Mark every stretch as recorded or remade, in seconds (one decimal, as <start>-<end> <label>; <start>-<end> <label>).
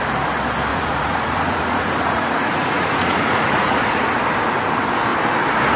0.0-0.7 recorded; 0.7-4.2 remade; 4.2-5.8 recorded